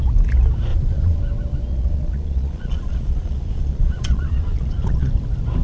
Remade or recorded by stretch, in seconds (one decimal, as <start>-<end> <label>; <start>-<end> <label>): 0.0-0.7 recorded; 0.7-1.2 remade; 1.2-1.7 recorded; 1.7-5.1 remade; 5.1-5.6 recorded